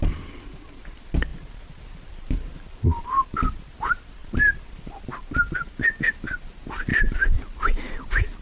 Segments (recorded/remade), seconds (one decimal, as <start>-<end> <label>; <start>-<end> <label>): 0.0-1.3 recorded; 1.3-3.8 remade; 3.8-4.2 recorded; 4.2-4.8 remade; 4.8-6.9 recorded; 6.9-7.4 remade; 7.4-8.4 recorded

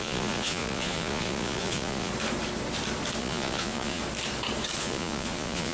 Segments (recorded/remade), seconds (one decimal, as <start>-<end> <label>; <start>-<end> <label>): 0.0-2.1 remade; 2.1-3.2 recorded; 3.2-4.0 remade; 4.0-4.8 recorded; 4.8-5.7 remade

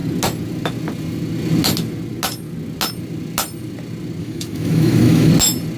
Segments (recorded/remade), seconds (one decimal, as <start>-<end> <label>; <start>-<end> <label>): 0.0-4.2 recorded; 4.2-5.3 remade; 5.3-5.8 recorded